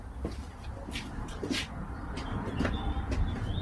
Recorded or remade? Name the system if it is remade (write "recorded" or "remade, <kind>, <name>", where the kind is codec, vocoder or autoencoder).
recorded